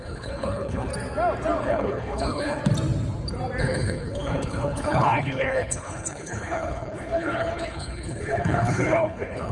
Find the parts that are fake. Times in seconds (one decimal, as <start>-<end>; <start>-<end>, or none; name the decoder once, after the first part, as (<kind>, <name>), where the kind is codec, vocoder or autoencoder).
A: 0.0-0.9 (codec, HILCodec); 1.6-2.6; 3.6-9.5